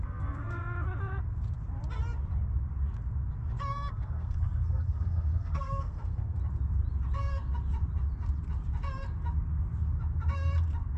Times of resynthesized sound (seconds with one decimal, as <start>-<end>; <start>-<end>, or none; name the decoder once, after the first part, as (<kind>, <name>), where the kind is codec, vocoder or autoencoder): 0.0-0.6 (codec, SNAC); 3.9-6.4